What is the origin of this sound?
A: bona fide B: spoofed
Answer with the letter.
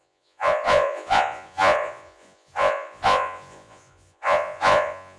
B